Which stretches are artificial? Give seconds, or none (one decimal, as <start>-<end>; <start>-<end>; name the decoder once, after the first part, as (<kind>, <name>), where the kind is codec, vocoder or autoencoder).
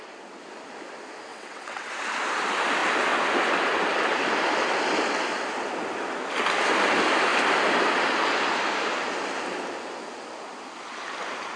1.3-1.9 (vocoder, WaveNeXt)